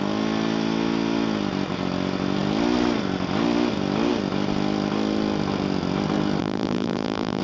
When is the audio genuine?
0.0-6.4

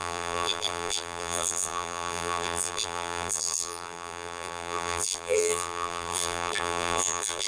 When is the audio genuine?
none

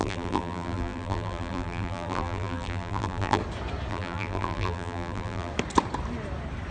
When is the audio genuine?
3.4-3.9; 5.5-6.7

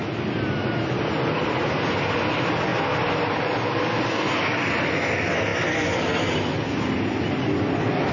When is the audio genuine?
0.0-2.7; 3.7-8.1

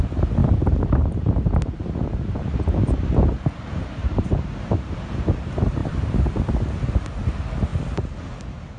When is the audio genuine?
0.0-0.4; 1.4-4.0; 4.9-5.8; 6.5-8.8